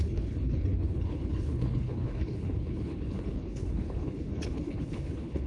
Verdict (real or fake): fake